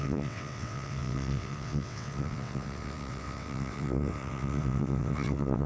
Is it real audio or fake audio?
fake